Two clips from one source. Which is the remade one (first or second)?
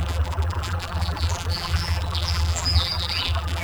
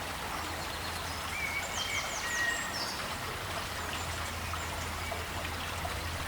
first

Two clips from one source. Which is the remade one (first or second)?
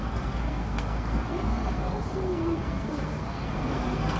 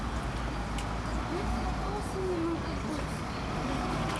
first